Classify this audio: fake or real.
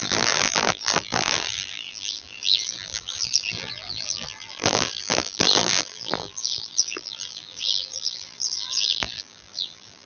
fake